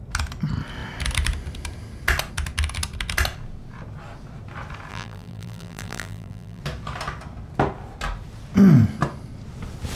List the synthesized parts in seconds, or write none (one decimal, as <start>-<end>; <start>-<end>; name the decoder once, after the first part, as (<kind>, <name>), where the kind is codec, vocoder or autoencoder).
4.9-6.6 (vocoder, BigVGAN v2)